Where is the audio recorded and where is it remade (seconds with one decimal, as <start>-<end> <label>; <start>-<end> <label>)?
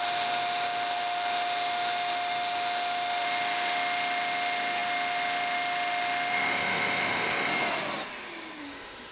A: 0.0-7.5 remade; 7.5-8.6 recorded; 8.6-9.1 remade